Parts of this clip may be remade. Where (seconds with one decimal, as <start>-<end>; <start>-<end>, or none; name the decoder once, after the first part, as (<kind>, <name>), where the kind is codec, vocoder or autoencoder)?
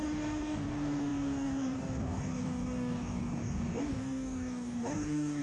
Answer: 0.0-5.4 (codec, DAC)